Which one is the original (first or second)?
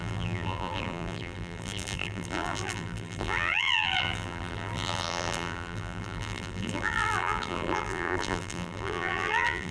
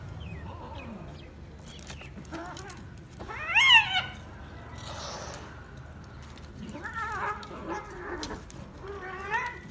second